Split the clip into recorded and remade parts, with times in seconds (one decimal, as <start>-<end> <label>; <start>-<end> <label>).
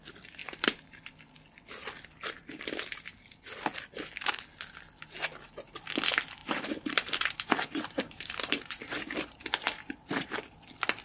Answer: 0.0-0.4 recorded; 0.4-1.1 remade; 1.1-6.4 recorded; 6.4-10.3 remade; 10.3-11.0 recorded